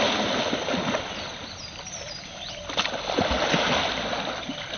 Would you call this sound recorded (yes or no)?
yes